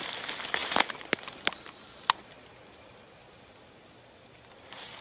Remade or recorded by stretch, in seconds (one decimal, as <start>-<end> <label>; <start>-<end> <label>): 0.0-5.0 recorded